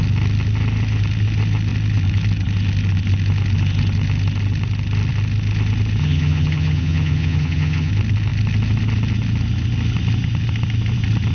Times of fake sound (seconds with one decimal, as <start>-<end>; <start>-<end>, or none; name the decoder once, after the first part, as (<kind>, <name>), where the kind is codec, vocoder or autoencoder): 6.0-7.9 (vocoder, HiFi-GAN)